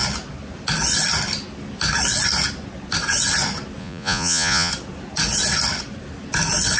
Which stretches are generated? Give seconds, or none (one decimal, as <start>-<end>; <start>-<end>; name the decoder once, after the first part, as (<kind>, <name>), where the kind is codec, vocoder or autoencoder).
3.8-4.7 (vocoder, Vocos)

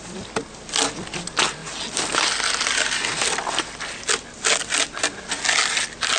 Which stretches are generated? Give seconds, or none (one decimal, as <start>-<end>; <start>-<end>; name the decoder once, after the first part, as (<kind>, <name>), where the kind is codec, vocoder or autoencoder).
none

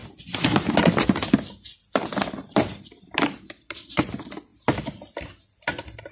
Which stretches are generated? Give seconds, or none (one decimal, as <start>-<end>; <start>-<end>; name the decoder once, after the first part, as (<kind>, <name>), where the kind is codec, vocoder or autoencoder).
2.0-4.1 (vocoder, BigVGAN v2)

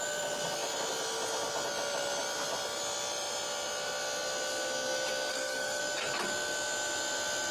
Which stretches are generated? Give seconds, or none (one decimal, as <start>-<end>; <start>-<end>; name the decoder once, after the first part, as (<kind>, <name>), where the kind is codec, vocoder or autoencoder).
5.3-5.8 (codec, SNAC)

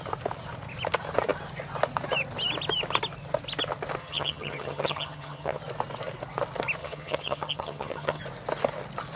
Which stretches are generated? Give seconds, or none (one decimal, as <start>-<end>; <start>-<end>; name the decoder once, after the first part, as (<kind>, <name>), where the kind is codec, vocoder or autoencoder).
4.0-5.6 (vocoder, HiFi-GAN); 6.8-8.2

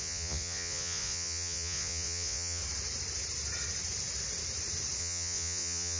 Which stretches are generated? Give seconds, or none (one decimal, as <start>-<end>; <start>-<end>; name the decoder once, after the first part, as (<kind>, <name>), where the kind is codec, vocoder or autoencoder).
0.0-2.6 (vocoder, Vocos); 5.0-6.0

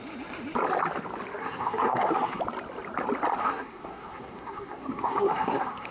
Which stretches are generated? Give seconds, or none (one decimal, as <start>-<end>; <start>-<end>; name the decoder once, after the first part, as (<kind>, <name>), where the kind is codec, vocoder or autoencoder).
1.4-2.4 (codec, SNAC); 3.4-5.9

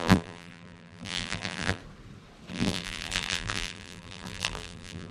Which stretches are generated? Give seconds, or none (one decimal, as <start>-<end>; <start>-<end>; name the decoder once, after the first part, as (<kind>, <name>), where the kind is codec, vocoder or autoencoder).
0.0-1.8 (vocoder, BigVGAN v2); 2.5-5.1